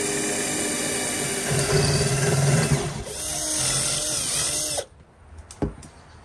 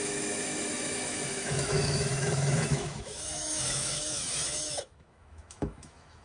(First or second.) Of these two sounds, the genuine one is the first